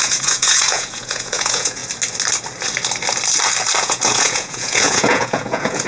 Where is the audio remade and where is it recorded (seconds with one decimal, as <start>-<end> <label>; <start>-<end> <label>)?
0.0-1.8 remade; 1.8-3.8 recorded; 3.8-5.9 remade